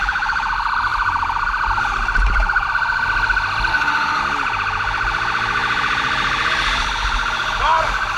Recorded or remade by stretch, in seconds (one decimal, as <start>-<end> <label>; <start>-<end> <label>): 0.0-3.7 recorded; 3.7-4.2 remade; 4.2-8.2 recorded